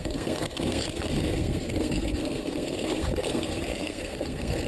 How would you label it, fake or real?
fake